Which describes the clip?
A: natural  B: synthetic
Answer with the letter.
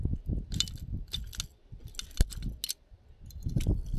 A